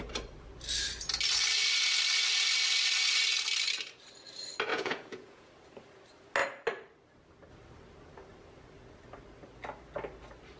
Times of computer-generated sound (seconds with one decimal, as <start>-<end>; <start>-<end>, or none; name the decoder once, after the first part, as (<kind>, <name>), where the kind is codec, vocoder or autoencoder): 4.7-5.5 (vocoder, Vocos)